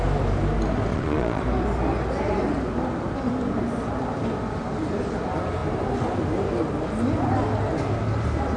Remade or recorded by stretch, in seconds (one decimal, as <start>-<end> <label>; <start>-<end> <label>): 0.0-0.9 recorded; 0.9-1.4 remade; 1.4-8.6 recorded